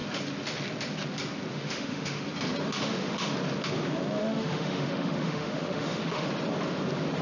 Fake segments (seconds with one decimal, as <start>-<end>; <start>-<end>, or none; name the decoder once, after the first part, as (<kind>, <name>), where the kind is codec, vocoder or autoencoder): 1.5-2.2 (autoencoder, DAC-VAE); 2.7-3.3; 4.2-6.3